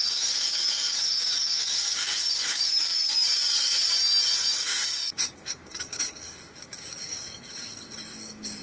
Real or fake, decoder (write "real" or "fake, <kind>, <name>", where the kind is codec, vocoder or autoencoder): fake, codec, DAC